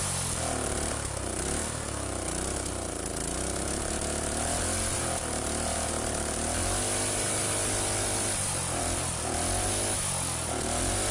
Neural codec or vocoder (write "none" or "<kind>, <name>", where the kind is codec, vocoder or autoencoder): none